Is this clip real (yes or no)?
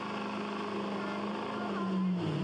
yes